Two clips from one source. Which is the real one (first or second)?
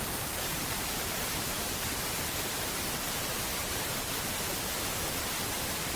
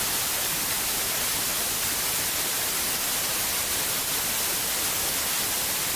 second